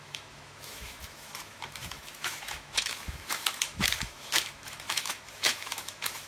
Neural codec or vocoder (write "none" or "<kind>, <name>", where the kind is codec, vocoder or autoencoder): autoencoder, DAC-VAE